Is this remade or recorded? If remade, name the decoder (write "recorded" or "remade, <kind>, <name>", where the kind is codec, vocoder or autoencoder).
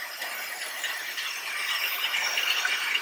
recorded